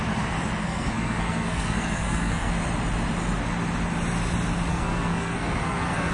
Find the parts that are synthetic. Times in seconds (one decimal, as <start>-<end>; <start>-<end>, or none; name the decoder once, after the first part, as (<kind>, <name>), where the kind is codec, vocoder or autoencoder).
0.6-2.5 (codec, SNAC); 4.7-6.1